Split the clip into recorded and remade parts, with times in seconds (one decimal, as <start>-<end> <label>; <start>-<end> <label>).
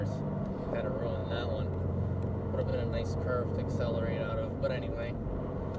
0.0-5.8 recorded